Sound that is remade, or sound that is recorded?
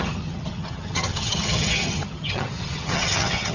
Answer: remade